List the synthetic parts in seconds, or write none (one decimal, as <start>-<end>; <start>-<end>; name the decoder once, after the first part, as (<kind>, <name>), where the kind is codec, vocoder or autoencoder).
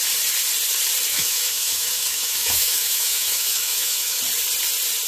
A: 1.1-4.2 (autoencoder, DAC-VAE)